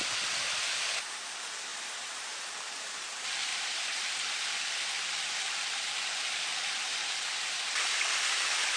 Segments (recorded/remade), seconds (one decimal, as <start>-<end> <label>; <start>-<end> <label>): 0.0-1.7 recorded; 1.7-2.4 remade; 2.4-3.5 recorded; 3.5-4.3 remade; 4.3-8.8 recorded